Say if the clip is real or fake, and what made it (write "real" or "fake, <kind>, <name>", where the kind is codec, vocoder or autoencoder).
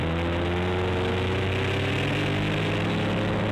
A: real